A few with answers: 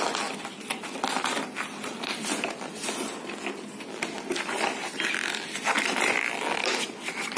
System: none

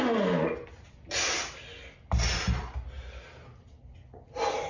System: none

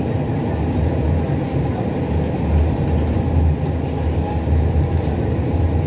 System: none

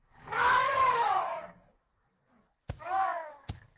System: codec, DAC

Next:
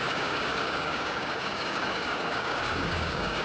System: codec, DAC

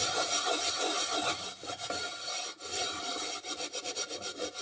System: none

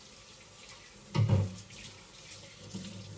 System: none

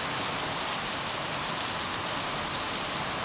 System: none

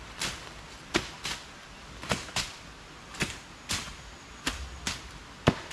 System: none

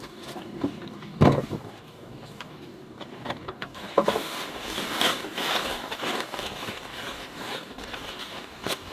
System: codec, DAC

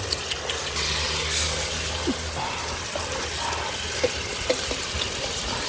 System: none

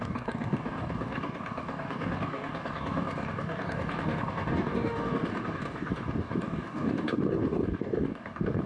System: codec, DAC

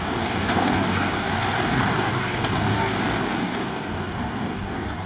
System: codec, DAC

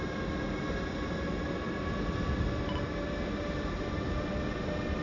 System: none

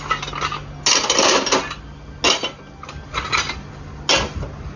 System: none